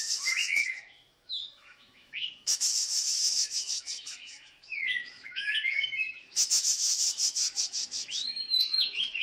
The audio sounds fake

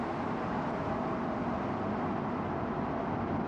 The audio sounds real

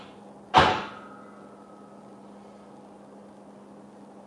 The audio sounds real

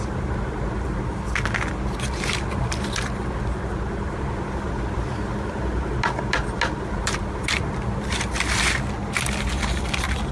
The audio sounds real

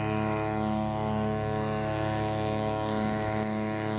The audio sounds fake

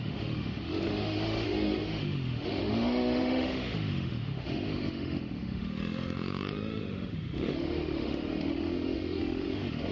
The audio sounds fake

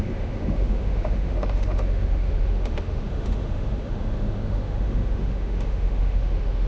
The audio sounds fake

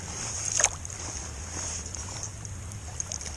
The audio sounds real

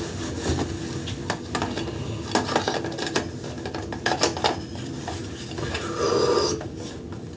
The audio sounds real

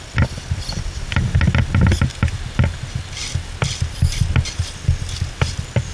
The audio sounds real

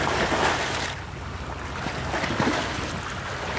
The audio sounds real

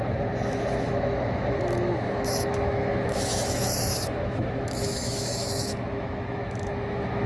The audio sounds fake